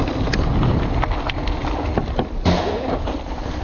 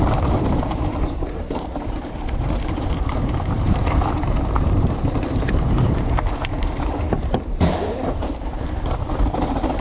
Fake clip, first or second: second